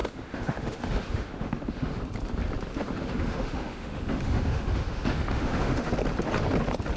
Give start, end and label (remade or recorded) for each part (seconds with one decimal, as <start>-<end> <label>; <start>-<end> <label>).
0.0-2.0 remade; 2.0-2.7 recorded; 2.7-5.9 remade; 5.9-7.0 recorded